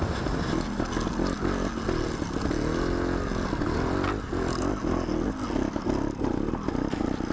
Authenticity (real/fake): real